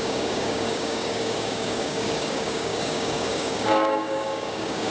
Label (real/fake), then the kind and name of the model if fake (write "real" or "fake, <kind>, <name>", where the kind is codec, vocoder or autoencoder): fake, codec, DAC